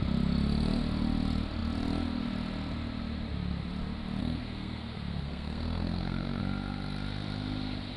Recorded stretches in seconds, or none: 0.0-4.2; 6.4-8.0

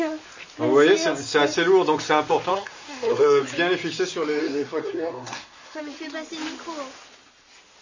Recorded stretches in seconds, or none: 0.0-2.5; 3.4-4.4; 5.8-7.8

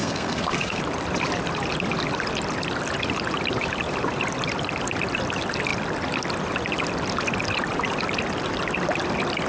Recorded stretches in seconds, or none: 0.8-9.5

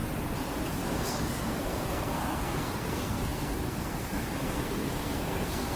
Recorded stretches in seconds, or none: 0.0-0.8

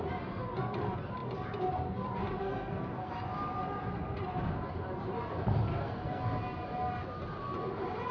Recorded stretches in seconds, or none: 0.0-2.4; 3.1-5.7; 6.2-8.1

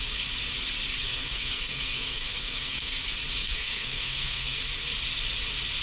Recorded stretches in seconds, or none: 0.0-1.0; 3.0-3.4; 4.6-5.8

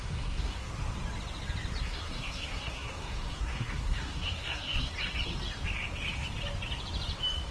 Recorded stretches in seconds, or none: 0.7-1.8; 4.9-7.5